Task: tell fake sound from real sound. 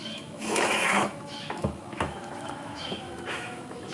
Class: fake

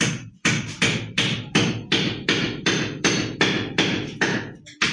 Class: fake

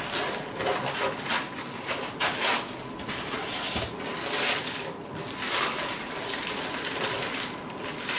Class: real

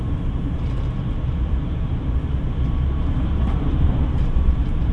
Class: fake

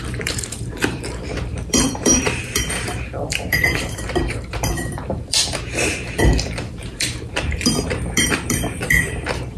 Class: fake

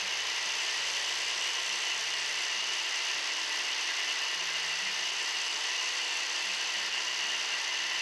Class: real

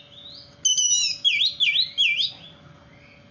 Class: real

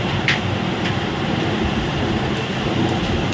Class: fake